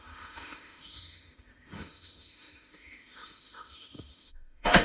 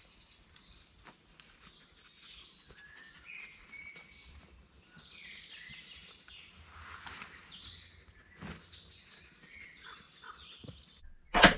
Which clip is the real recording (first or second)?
second